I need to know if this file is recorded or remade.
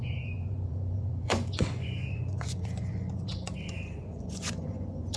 remade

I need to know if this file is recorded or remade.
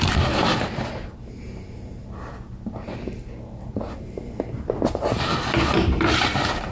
recorded